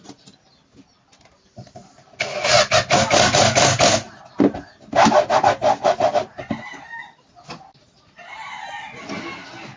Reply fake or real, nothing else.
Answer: real